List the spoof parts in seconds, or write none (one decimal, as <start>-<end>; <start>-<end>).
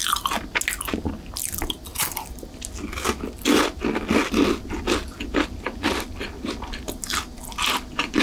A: none